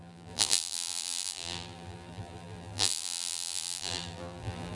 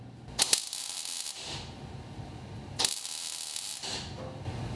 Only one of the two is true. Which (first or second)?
second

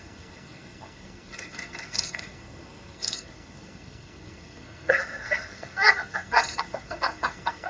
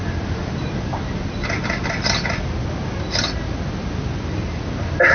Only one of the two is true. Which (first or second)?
second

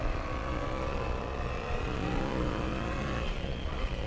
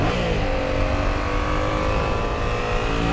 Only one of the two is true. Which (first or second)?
second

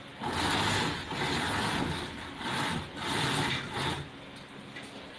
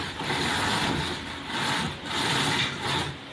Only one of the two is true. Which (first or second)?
first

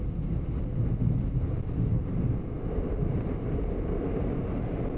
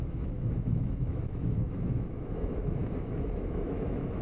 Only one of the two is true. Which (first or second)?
first